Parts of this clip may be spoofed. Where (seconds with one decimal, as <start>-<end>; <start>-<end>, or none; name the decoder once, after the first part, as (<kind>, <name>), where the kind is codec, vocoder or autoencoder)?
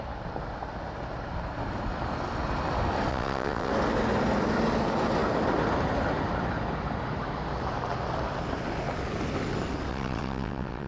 3.1-3.7 (vocoder, WaveNeXt); 9.9-10.9